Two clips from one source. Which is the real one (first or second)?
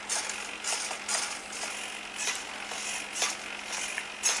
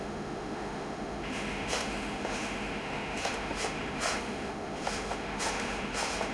first